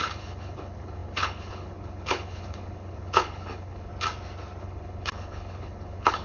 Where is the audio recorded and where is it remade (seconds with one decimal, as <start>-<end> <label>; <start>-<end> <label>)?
0.0-3.9 remade; 3.9-4.6 recorded; 4.6-6.2 remade